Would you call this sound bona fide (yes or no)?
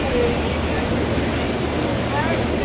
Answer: yes